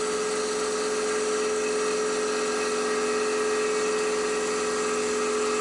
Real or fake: real